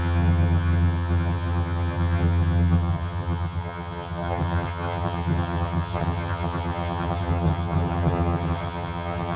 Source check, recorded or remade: remade